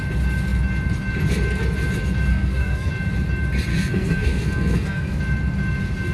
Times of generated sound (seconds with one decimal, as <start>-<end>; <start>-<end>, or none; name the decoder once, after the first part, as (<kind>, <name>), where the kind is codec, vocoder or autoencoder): 2.3-2.9 (codec, SNAC); 3.7-5.2